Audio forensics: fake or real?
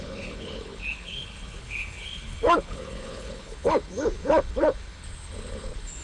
fake